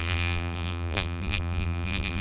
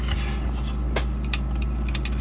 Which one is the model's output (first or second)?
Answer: first